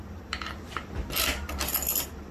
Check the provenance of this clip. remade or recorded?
recorded